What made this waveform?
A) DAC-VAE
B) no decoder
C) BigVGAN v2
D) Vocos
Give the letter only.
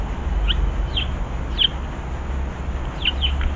B